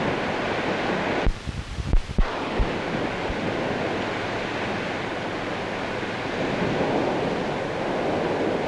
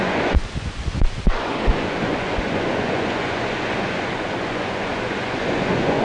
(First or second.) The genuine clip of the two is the first